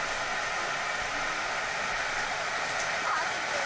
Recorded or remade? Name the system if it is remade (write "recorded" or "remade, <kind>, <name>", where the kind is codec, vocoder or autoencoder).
recorded